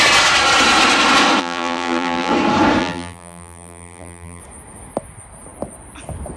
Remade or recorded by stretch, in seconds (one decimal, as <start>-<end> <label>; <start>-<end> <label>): 0.0-1.4 recorded; 1.4-2.3 remade; 2.3-2.8 recorded; 2.8-4.4 remade; 4.4-6.4 recorded